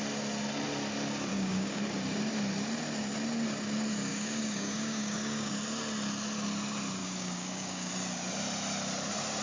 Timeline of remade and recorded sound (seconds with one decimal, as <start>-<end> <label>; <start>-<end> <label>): 0.0-1.3 recorded; 1.3-1.8 remade; 1.8-4.1 recorded; 4.1-5.5 remade; 5.5-7.0 recorded; 7.0-7.9 remade; 7.9-9.4 recorded